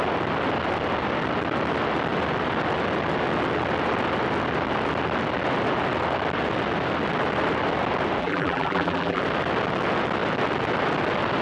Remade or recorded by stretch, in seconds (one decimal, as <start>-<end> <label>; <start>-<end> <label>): 0.0-8.2 recorded; 8.2-9.2 remade; 9.2-11.4 recorded